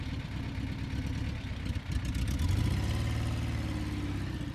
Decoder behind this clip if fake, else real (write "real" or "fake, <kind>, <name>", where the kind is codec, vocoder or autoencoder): real